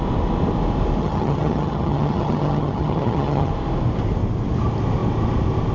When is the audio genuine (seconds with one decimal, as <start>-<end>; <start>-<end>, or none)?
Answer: 0.0-1.0; 3.5-5.7